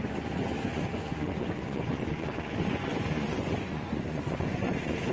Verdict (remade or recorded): remade